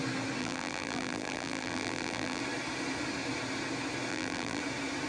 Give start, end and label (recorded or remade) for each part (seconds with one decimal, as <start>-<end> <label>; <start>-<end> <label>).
0.0-0.4 recorded; 0.4-2.4 remade; 2.4-4.1 recorded; 4.1-4.6 remade; 4.6-5.1 recorded